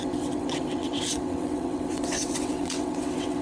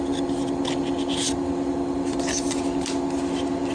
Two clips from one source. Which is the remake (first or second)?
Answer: first